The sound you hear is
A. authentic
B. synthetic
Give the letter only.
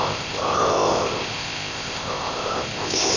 B